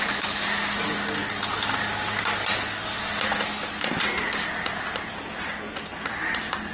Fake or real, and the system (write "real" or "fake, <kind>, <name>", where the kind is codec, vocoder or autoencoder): real